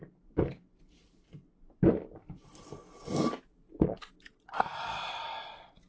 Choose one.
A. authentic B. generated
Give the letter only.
A